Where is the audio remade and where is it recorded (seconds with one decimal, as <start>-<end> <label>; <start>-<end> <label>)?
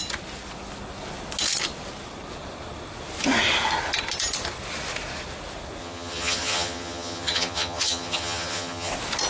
0.0-5.8 recorded; 5.8-8.9 remade; 8.9-9.3 recorded